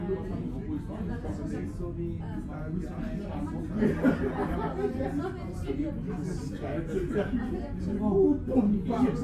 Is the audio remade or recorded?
recorded